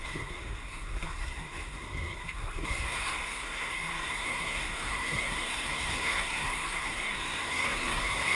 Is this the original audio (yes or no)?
no